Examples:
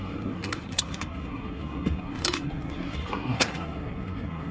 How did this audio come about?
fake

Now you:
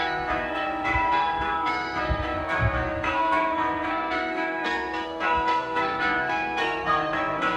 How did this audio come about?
fake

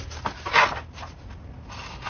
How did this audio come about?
real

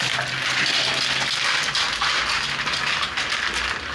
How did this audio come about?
real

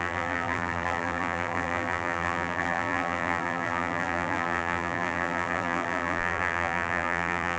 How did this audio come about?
fake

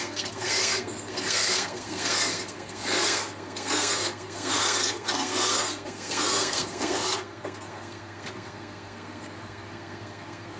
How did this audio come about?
fake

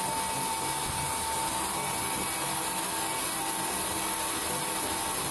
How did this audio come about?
real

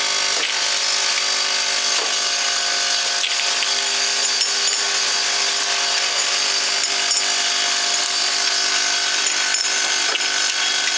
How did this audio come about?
real